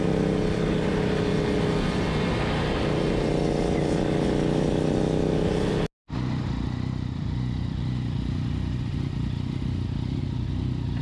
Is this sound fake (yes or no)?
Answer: no